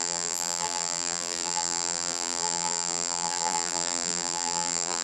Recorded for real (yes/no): no